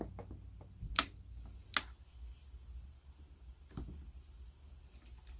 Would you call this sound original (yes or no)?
yes